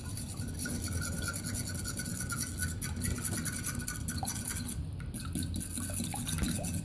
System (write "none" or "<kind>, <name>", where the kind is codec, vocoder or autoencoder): none